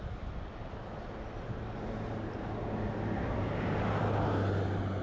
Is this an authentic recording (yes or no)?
yes